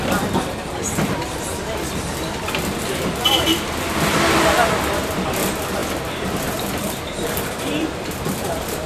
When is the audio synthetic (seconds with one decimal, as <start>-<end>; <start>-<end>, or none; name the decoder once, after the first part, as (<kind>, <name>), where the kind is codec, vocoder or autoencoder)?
5.8-8.9 (vocoder, BigVGAN v2)

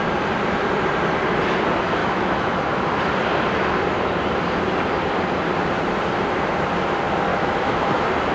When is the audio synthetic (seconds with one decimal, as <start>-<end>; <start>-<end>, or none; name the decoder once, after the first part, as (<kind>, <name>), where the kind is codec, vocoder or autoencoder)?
2.0-2.6 (autoencoder, DAC-VAE); 7.3-7.8

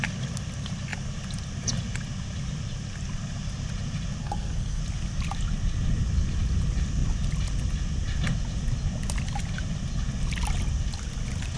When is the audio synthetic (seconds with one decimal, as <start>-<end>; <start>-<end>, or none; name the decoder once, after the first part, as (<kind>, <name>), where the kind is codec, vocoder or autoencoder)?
4.2-4.8 (codec, SNAC)

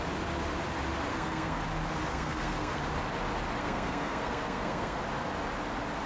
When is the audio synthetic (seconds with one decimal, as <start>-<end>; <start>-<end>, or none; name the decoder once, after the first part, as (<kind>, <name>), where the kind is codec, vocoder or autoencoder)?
1.1-1.6 (codec, SNAC); 2.1-2.8; 3.6-5.0

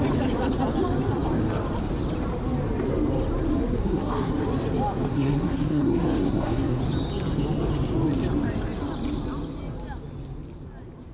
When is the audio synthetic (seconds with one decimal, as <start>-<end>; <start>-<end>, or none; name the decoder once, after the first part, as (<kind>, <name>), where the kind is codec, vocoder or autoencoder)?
3.5-4.3 (codec, SNAC); 5.1-6.8

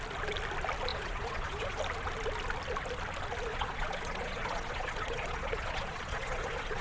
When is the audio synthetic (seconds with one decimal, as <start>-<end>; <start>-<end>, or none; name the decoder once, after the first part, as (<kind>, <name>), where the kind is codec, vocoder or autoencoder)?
0.9-1.8 (vocoder, Vocos); 3.5-6.8

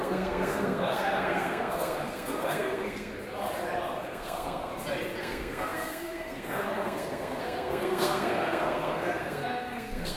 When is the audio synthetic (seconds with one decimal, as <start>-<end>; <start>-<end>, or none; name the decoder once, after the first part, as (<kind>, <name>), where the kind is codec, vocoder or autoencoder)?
0.0-3.1 (codec, SNAC); 4.0-4.7; 5.2-10.2